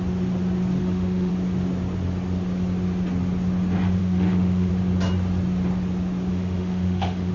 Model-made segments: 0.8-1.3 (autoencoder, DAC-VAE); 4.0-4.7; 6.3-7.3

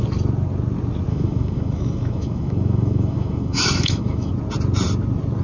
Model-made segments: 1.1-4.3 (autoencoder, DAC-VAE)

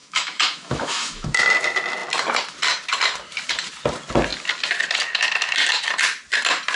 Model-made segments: 0.0-1.4 (autoencoder, DAC-VAE)